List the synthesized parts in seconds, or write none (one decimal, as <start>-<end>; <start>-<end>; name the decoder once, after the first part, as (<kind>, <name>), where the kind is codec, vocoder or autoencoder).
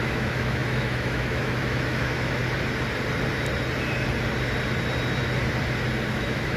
0.0-2.4 (autoencoder, DAC-VAE); 6.1-6.6